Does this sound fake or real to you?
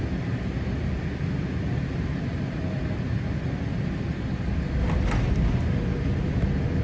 real